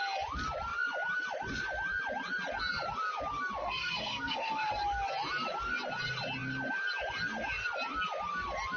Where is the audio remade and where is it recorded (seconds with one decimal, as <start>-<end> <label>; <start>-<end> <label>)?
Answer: 0.0-3.6 recorded; 3.6-4.7 remade; 4.7-8.8 recorded